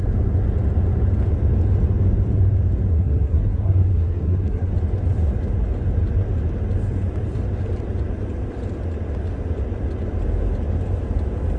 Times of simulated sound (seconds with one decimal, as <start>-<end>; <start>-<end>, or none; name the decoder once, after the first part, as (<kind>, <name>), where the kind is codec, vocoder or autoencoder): 2.9-4.7 (codec, SNAC)